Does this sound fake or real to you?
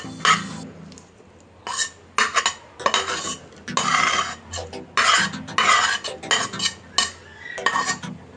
real